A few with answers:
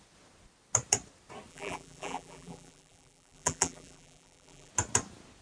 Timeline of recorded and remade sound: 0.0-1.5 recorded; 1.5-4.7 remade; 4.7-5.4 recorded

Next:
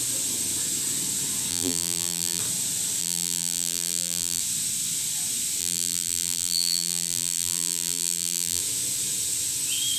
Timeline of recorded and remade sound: 0.0-1.5 recorded; 1.5-2.4 remade; 2.4-3.0 recorded; 3.0-4.4 remade; 4.4-5.6 recorded; 5.6-8.6 remade; 8.6-10.0 recorded

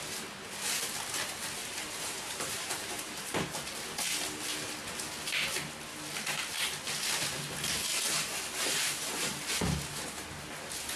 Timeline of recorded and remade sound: 0.0-1.6 recorded; 1.6-3.4 remade; 3.4-7.9 recorded; 7.9-9.5 remade; 9.5-11.0 recorded

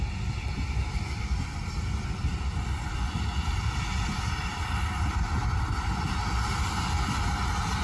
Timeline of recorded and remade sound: 0.0-7.8 recorded

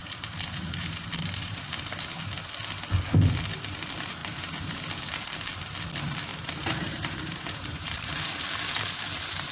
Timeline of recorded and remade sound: 0.0-1.6 remade; 1.6-4.2 recorded; 4.2-4.8 remade; 4.8-6.3 recorded; 6.3-8.1 remade; 8.1-9.5 recorded